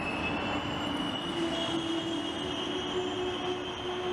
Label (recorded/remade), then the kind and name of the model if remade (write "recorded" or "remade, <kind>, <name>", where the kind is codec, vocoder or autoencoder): recorded